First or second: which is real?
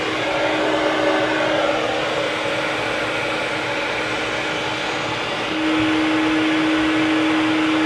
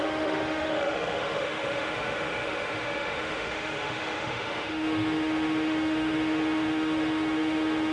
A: first